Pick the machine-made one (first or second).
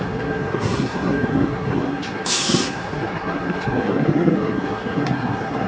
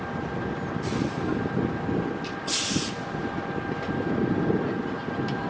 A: first